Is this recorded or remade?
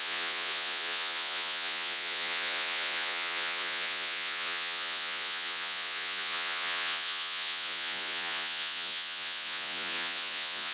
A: remade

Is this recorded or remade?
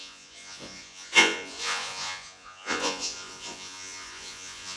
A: remade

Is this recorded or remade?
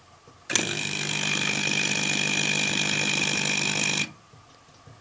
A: recorded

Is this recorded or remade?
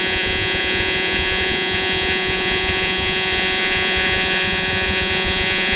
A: remade